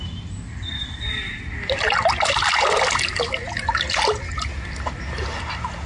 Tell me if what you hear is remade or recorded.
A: recorded